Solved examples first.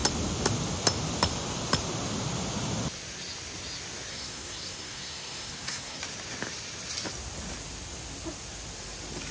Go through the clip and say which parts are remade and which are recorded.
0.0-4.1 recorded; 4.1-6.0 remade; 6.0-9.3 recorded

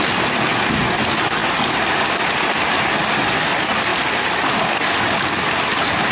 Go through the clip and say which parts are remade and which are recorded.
0.0-6.1 recorded

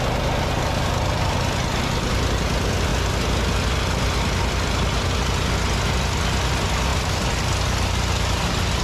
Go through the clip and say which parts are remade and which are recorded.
0.0-8.8 recorded

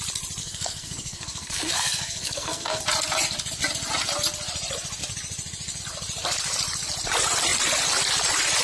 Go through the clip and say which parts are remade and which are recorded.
0.0-0.4 recorded; 0.4-2.8 remade; 2.8-8.6 recorded

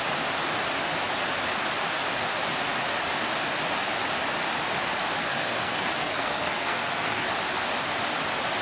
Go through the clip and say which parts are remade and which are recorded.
0.0-5.2 recorded; 5.2-7.3 remade; 7.3-8.6 recorded

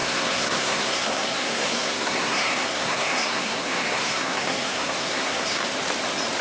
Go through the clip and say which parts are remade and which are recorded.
0.0-5.6 remade; 5.6-6.4 recorded

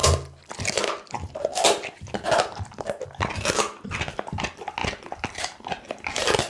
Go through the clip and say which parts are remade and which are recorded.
0.0-6.5 recorded